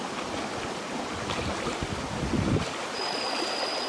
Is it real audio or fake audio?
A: real